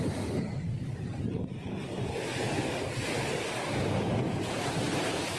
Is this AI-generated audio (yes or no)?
yes